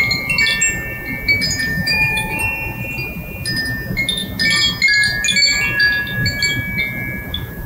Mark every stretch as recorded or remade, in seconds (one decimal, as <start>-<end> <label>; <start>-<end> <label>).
0.0-1.7 recorded; 1.7-2.4 remade; 2.4-7.7 recorded